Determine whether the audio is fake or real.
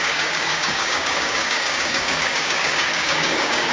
fake